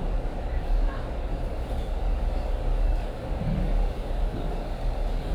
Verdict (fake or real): fake